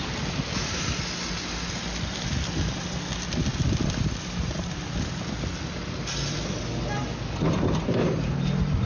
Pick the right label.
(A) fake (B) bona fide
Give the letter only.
B